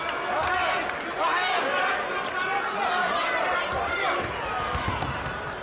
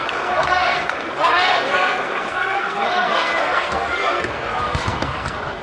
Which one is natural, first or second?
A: first